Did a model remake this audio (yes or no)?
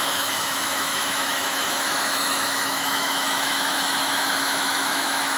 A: yes